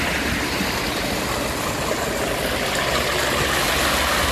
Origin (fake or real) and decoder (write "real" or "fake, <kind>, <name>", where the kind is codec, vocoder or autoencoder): real